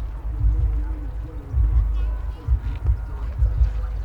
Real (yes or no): yes